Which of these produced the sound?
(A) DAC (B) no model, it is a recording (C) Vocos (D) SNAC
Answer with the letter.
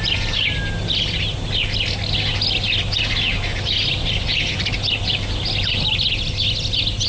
B